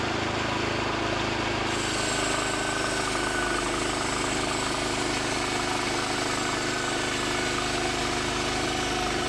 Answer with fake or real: real